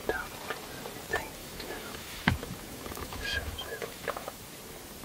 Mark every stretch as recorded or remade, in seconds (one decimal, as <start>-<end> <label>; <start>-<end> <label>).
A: 0.0-1.4 recorded; 1.4-4.4 remade; 4.4-5.0 recorded